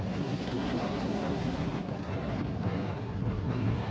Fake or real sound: fake